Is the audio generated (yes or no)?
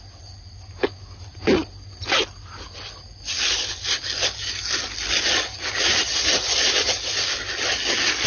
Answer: no